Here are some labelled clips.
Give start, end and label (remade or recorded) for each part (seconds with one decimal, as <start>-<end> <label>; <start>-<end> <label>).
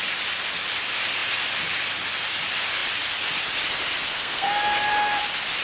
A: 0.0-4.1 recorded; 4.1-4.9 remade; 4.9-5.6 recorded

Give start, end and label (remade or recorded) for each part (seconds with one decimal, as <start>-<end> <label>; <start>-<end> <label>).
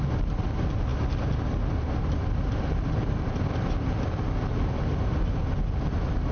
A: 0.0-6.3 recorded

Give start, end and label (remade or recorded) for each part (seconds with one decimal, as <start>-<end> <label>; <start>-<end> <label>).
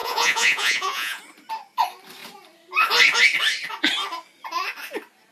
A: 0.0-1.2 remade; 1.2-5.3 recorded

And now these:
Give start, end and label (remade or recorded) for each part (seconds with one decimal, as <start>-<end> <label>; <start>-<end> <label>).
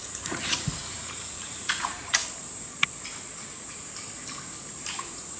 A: 0.0-2.2 remade; 2.2-4.9 recorded; 4.9-5.4 remade